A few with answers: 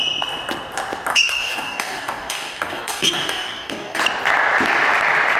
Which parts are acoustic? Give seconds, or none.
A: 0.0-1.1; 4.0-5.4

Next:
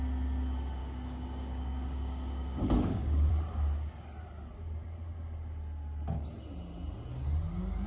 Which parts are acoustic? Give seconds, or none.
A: 0.0-0.8; 3.3-7.9

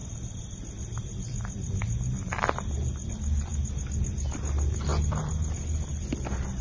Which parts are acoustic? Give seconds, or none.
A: 0.0-6.6

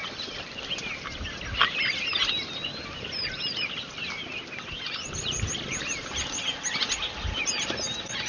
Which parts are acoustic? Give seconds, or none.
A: 0.0-8.3

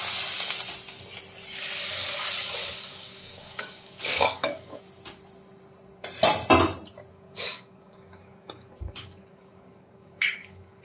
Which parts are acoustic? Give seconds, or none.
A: 0.0-2.6; 4.8-7.1

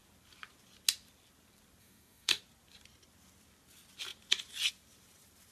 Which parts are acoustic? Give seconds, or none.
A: 0.0-1.8; 2.4-5.5

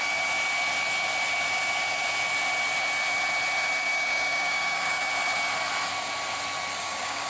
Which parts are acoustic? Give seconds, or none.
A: 0.0-3.9; 5.0-6.7

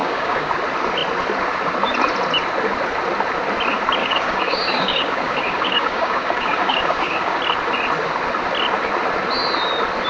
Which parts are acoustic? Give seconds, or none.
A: 0.5-4.0; 7.4-10.1